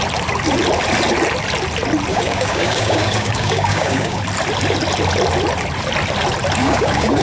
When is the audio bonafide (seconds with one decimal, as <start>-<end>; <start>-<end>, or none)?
0.0-2.1; 4.2-6.6